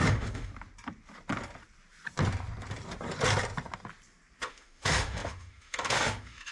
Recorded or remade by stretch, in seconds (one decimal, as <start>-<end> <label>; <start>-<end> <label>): 0.0-0.5 remade; 0.5-4.4 recorded; 4.4-6.5 remade